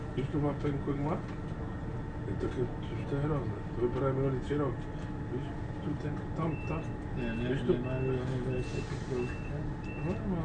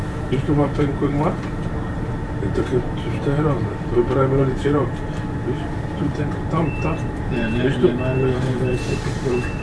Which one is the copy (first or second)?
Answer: second